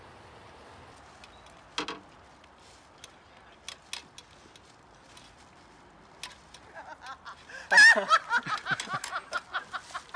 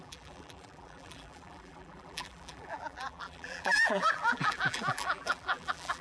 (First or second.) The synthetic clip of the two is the second